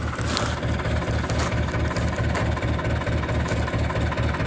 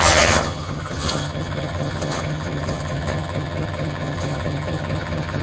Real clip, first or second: first